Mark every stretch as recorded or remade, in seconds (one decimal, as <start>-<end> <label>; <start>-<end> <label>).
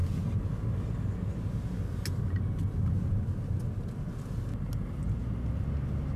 0.0-6.2 recorded